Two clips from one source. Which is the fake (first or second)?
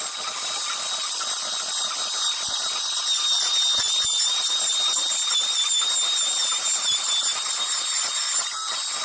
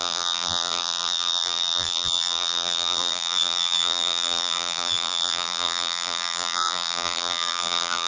second